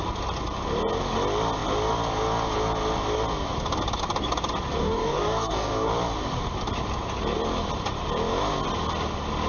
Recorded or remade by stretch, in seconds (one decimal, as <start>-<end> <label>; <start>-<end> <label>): 0.0-4.8 recorded; 4.8-5.9 remade; 5.9-9.5 recorded